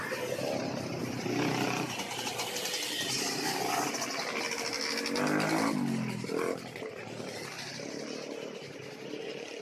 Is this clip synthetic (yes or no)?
no